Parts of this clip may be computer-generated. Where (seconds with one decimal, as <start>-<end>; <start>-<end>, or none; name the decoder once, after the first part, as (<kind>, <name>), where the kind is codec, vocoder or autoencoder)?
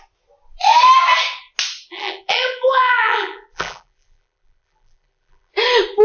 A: 1.9-5.5 (vocoder, BigVGAN v2)